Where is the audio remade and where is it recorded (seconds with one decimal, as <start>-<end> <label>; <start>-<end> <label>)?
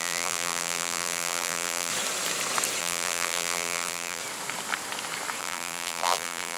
0.0-1.9 remade; 1.9-2.8 recorded; 2.8-4.2 remade; 4.2-5.4 recorded; 5.4-6.6 remade